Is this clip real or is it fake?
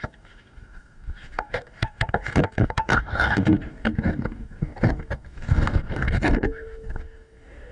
fake